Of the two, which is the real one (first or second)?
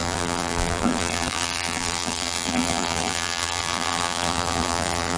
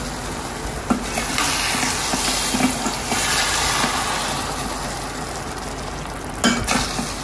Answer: second